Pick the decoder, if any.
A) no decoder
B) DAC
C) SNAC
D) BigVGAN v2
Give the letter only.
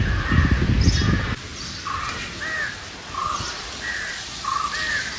A